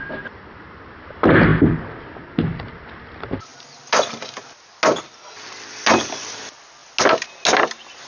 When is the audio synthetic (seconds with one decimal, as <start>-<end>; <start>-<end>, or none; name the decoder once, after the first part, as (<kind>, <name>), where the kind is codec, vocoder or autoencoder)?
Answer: none

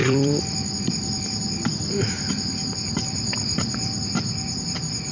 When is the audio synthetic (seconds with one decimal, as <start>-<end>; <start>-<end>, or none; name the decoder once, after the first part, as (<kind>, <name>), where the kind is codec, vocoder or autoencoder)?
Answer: 0.0-2.0 (vocoder, BigVGAN v2)

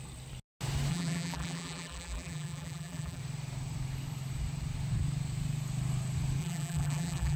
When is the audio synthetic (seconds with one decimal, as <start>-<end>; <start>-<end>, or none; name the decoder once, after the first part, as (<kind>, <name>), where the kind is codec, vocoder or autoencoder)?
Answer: 0.9-3.2 (vocoder, BigVGAN v2); 6.4-7.4

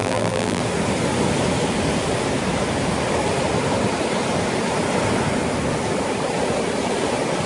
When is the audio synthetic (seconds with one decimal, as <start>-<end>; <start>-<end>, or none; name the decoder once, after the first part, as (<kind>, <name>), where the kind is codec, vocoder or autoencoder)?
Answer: 0.0-0.6 (vocoder, BigVGAN v2)